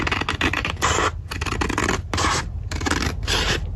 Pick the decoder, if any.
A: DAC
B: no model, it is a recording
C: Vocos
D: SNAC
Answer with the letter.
B